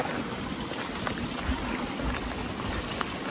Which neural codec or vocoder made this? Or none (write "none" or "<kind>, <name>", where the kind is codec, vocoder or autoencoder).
none